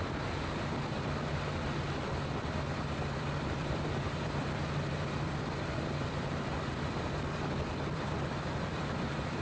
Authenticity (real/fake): fake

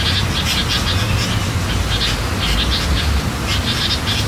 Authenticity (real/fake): real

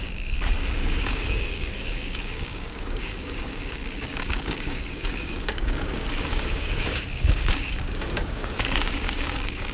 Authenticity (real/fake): fake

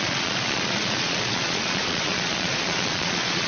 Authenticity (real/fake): fake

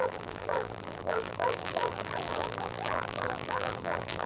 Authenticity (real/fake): fake